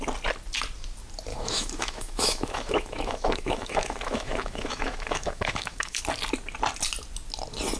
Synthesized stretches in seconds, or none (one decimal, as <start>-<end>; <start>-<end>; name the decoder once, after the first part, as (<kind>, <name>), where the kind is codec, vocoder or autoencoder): 1.3-6.0 (autoencoder, DAC-VAE)